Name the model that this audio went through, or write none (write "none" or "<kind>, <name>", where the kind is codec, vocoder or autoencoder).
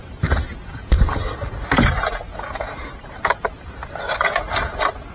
vocoder, BigVGAN v2